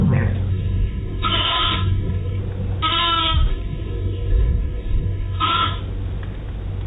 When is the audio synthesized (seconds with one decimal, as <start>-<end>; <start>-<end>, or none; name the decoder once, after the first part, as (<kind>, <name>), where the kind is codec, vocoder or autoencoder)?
0.5-2.4 (codec, DAC); 3.5-5.8